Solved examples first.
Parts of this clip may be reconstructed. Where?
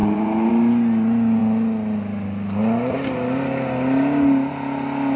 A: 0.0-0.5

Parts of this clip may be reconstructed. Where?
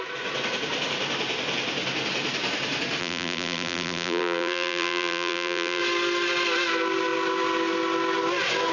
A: 3.0-5.8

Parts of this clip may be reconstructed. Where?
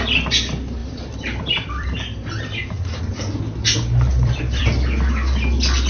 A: 0.8-3.0; 4.1-4.6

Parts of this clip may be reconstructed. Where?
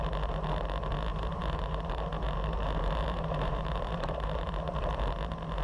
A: 1.1-4.5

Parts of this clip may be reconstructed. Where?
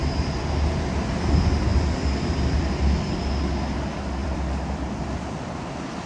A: 1.7-3.4; 4.2-5.1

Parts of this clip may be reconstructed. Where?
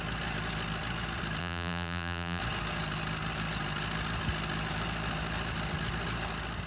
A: 1.4-2.4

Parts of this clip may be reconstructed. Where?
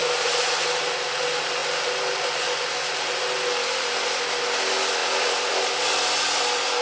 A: 0.0-0.8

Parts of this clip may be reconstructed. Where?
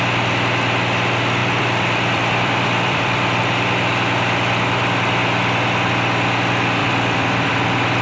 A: 1.4-3.4; 6.8-7.5